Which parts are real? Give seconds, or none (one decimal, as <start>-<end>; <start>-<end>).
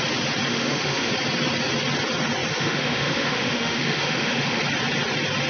0.0-0.5; 1.1-2.5; 4.6-5.5